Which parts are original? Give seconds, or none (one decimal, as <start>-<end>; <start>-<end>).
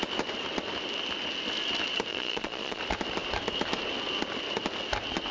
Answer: 0.0-2.1; 2.8-5.3